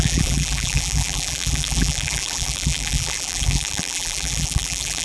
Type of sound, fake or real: fake